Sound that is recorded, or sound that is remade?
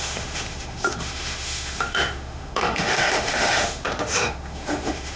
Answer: remade